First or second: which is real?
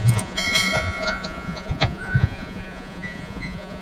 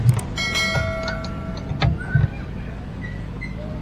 second